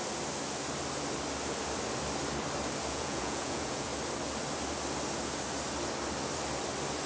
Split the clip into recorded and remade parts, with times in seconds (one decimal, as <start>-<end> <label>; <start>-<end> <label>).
0.0-2.9 recorded; 2.9-3.9 remade; 3.9-7.1 recorded